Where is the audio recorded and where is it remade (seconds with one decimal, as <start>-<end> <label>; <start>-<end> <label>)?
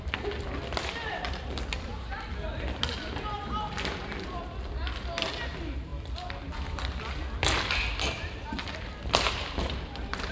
0.0-10.3 recorded